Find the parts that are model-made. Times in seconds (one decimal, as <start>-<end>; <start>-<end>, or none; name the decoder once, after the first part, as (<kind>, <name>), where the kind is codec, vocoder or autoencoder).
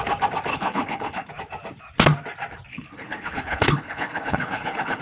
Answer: 0.5-1.3 (codec, HILCodec); 2.7-5.0